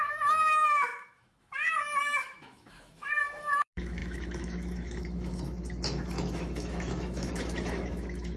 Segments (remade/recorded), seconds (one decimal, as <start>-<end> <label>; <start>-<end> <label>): 0.0-8.4 remade